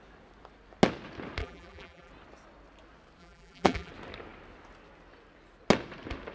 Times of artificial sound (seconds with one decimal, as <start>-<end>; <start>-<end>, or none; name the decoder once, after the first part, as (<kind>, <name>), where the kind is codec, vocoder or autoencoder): 1.4-2.1 (vocoder, BigVGAN v2); 3.2-3.9